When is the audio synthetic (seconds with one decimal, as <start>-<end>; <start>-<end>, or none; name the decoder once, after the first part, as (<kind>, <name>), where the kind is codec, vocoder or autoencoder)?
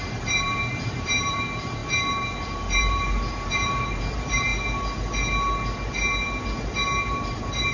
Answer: 0.0-4.5 (vocoder, BigVGAN v2); 7.0-7.7